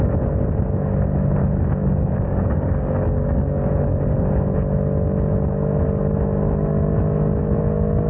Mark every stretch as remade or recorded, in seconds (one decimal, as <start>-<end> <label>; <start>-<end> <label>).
0.0-1.8 recorded; 1.8-3.9 remade; 3.9-8.1 recorded